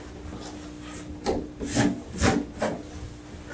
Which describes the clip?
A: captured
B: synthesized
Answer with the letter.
A